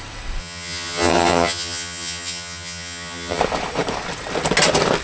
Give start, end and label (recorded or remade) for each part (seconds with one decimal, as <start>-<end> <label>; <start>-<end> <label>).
0.0-0.4 recorded; 0.4-3.4 remade; 3.4-5.0 recorded